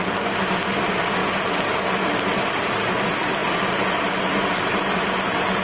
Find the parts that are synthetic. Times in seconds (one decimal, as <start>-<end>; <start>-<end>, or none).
0.0-1.2; 1.8-5.6

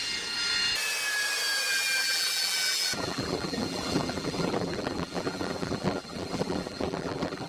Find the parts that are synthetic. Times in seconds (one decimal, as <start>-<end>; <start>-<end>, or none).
1.7-7.5

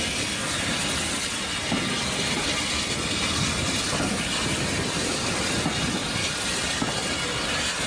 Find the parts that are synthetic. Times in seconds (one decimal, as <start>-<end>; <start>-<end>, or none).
none

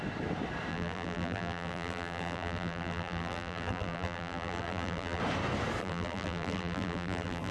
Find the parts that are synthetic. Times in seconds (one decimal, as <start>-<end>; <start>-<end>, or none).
0.7-5.2; 5.8-7.5

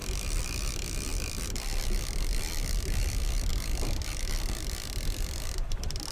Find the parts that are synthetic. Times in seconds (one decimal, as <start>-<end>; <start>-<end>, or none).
none

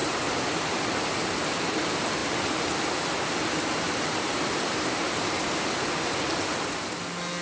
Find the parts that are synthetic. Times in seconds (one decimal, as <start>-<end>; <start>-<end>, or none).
2.2-2.8; 3.7-6.3